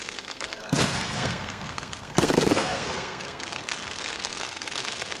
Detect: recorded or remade remade